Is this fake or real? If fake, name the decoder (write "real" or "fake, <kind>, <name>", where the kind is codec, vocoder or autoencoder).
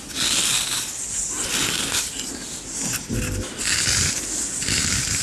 real